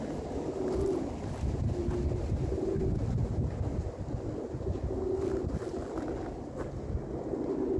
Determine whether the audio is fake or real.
real